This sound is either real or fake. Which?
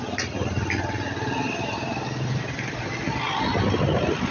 real